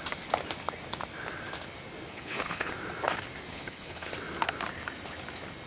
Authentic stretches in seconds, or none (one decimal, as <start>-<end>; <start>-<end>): 0.0-2.1; 2.7-3.5; 4.1-5.7